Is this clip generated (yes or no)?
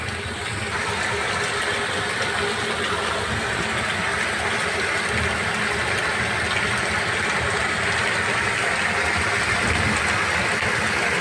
no